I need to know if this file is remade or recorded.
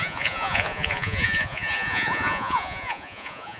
remade